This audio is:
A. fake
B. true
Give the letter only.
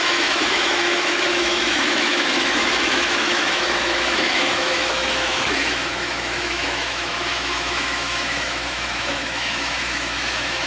A